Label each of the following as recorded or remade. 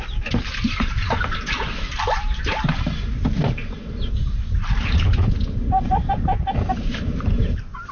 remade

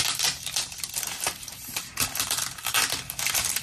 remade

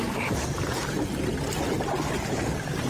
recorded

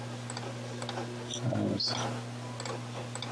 recorded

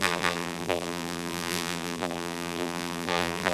remade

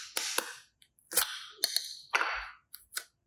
recorded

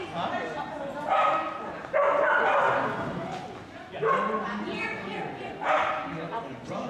recorded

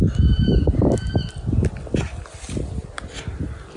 recorded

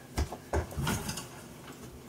recorded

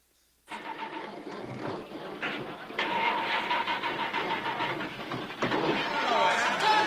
recorded